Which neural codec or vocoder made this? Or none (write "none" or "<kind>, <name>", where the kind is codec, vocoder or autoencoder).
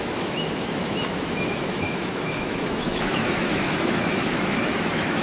autoencoder, DAC-VAE